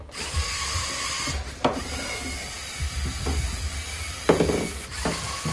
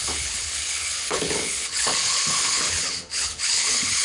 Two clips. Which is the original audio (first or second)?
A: first